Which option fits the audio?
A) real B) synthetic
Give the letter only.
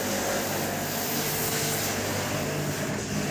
A